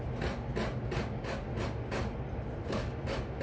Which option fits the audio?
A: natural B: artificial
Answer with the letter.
A